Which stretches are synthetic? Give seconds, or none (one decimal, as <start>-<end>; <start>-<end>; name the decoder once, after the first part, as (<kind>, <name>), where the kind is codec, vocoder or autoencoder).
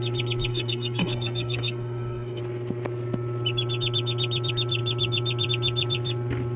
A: 0.5-2.4 (codec, SNAC)